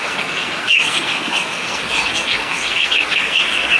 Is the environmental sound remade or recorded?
remade